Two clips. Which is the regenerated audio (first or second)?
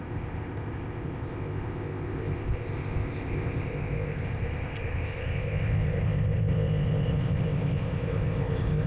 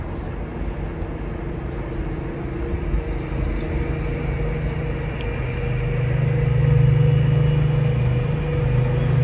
first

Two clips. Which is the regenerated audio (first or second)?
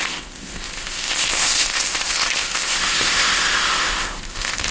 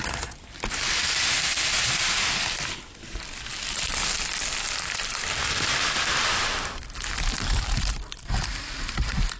first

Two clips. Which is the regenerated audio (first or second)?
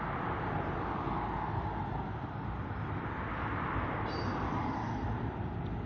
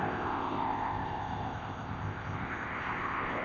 second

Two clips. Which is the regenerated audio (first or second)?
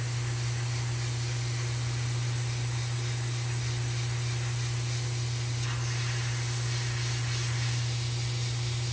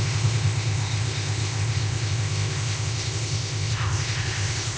second